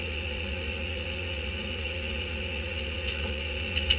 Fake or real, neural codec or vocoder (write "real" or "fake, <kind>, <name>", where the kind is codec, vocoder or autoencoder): fake, vocoder, Vocos